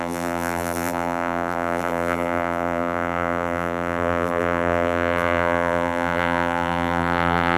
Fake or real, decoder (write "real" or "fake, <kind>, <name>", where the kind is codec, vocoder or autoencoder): fake, vocoder, BigVGAN v2